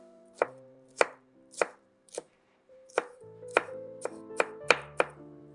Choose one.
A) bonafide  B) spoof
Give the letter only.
B